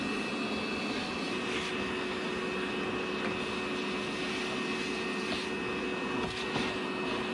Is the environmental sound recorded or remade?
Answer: recorded